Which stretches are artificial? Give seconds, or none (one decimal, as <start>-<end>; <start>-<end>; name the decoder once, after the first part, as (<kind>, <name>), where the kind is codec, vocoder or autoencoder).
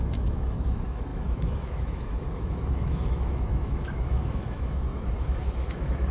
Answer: 0.0-6.1 (autoencoder, DAC-VAE)